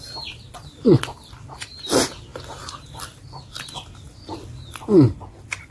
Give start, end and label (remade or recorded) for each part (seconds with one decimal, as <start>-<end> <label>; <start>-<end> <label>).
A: 0.0-5.7 recorded